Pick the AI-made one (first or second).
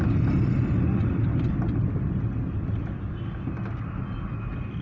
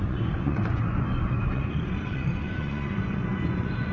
second